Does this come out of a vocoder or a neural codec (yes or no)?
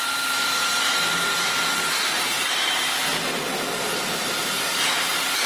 yes